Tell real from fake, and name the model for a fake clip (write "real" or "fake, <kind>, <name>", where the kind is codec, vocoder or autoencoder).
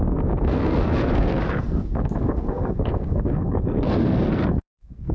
fake, codec, SNAC